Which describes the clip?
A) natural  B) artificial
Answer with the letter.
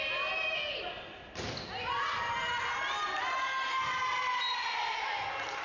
A